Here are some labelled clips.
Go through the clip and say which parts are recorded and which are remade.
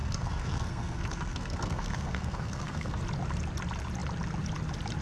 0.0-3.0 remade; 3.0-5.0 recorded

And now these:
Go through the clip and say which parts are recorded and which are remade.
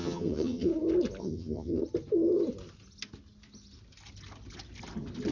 0.0-0.7 remade; 0.7-1.2 recorded; 1.2-1.8 remade; 1.8-5.3 recorded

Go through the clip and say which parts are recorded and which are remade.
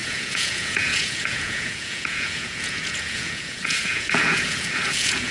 0.0-5.3 remade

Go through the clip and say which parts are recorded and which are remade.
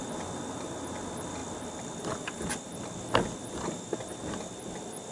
0.0-5.1 recorded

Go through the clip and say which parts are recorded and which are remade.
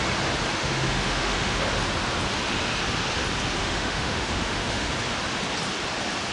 0.0-0.6 recorded; 0.6-1.6 remade; 1.6-3.6 recorded; 3.6-4.9 remade; 4.9-6.3 recorded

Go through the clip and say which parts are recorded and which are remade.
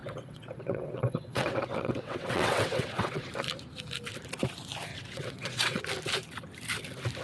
0.0-3.3 remade; 3.3-4.9 recorded; 4.9-5.8 remade; 5.8-7.2 recorded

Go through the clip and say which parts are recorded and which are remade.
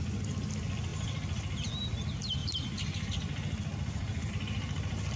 0.0-5.2 recorded